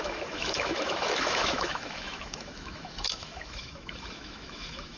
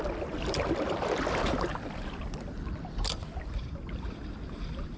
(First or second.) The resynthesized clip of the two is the first